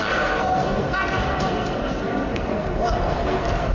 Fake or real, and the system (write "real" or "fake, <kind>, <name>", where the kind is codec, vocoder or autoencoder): fake, codec, SNAC